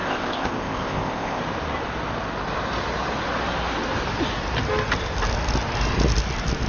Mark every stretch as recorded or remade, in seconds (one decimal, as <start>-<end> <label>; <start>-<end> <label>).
0.0-1.4 remade; 1.4-6.7 recorded